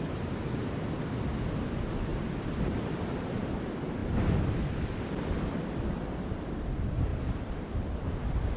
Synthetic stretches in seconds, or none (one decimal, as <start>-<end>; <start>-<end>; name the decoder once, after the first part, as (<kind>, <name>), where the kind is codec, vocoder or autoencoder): 0.0-8.6 (vocoder, BigVGAN v2)